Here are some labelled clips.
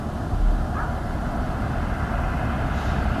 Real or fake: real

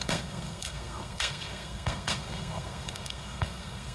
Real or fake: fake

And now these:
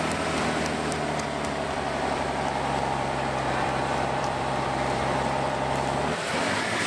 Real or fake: fake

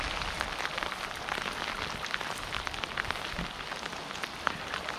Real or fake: real